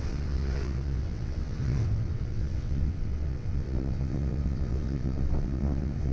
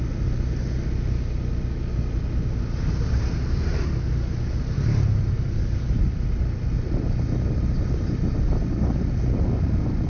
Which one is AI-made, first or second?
first